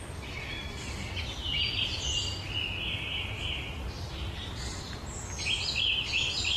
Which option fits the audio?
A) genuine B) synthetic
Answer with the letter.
A